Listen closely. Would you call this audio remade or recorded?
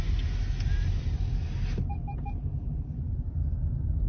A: recorded